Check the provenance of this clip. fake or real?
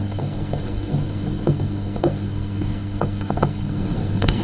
fake